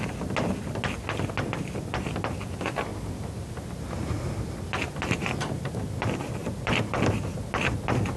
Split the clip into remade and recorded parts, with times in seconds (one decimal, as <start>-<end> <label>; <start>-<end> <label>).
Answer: 0.0-2.9 recorded; 2.9-5.8 remade; 5.8-6.4 recorded; 6.4-7.0 remade; 7.0-8.2 recorded